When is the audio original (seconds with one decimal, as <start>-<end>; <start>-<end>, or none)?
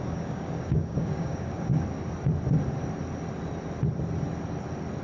1.7-5.0